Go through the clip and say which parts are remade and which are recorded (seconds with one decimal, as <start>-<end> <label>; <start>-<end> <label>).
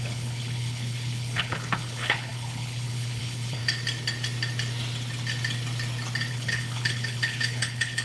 0.0-3.6 remade; 3.6-6.3 recorded; 6.3-8.0 remade